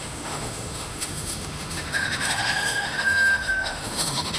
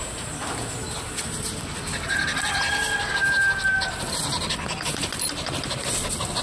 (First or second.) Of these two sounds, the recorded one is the second